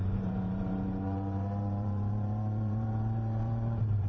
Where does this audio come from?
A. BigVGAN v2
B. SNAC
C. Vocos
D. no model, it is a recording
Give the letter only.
A